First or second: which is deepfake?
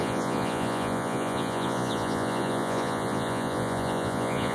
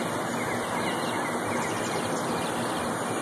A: first